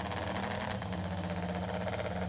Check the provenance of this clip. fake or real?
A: real